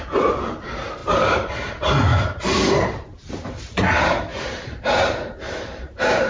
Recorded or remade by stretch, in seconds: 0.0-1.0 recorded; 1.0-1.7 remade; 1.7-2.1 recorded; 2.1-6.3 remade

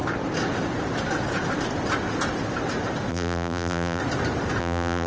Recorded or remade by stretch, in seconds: 0.0-3.1 recorded; 3.1-4.0 remade; 4.0-4.6 recorded; 4.6-5.1 remade

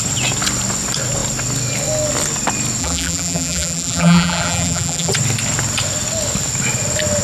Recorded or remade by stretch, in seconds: 0.0-2.8 recorded; 2.8-5.1 remade; 5.1-7.2 recorded

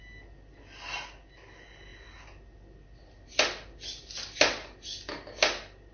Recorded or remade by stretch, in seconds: 0.0-5.9 recorded

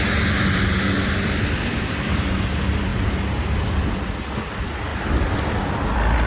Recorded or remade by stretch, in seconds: 0.0-2.9 remade; 2.9-3.4 recorded; 3.4-6.3 remade

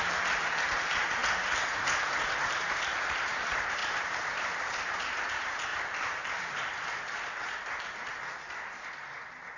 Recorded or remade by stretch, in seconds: 0.0-3.8 recorded; 3.8-5.0 remade; 5.0-5.7 recorded; 5.7-8.0 remade; 8.0-9.6 recorded

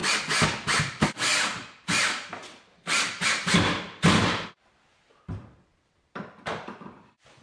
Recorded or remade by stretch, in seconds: 0.0-0.5 recorded; 0.5-7.4 remade